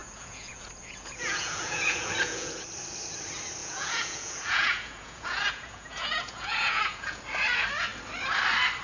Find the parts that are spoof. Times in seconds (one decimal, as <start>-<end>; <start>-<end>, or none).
0.0-2.6; 3.6-7.2